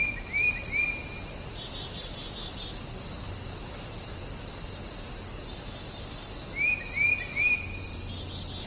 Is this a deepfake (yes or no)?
no